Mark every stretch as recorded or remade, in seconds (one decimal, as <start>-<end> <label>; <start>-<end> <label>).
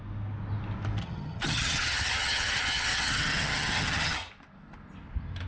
0.0-1.0 recorded; 1.0-4.3 remade; 4.3-5.5 recorded